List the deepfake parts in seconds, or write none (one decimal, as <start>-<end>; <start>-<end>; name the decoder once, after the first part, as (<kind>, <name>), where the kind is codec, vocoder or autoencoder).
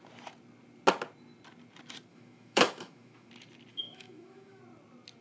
2.1-3.3 (autoencoder, DAC-VAE); 3.7-4.6